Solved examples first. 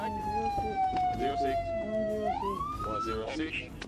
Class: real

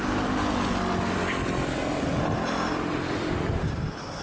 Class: real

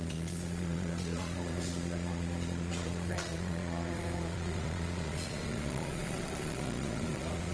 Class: fake